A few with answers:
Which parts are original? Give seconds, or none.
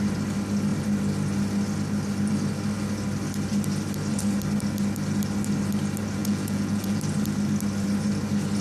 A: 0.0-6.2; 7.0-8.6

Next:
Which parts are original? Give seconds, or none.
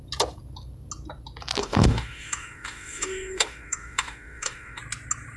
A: 0.0-1.6; 4.8-5.4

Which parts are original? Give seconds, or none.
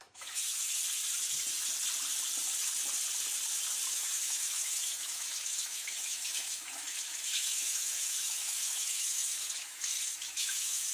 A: 0.8-3.9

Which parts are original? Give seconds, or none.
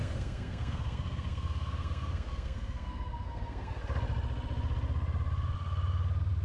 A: 3.8-6.4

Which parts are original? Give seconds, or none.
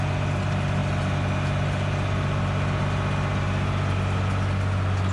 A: 0.0-5.1